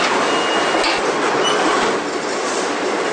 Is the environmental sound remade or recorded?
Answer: recorded